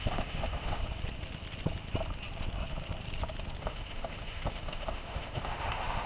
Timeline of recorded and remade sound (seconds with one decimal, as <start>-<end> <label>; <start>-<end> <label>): 0.0-0.8 remade; 0.8-3.6 recorded; 3.6-6.1 remade

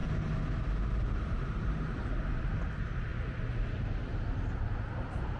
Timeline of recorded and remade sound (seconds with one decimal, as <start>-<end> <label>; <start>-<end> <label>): 0.0-0.8 recorded; 0.8-3.1 remade; 3.1-3.8 recorded; 3.8-5.4 remade

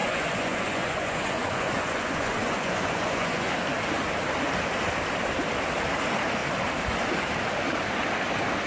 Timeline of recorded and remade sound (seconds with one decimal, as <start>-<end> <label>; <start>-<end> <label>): 0.0-3.5 remade; 3.5-8.7 recorded

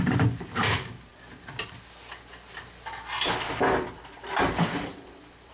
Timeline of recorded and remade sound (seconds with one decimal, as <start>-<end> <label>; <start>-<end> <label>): 0.0-1.1 remade; 1.1-4.4 recorded; 4.4-5.5 remade

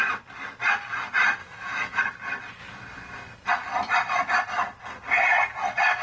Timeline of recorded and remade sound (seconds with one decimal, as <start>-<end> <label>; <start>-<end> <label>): 0.0-1.4 recorded; 1.4-2.0 remade; 2.0-6.0 recorded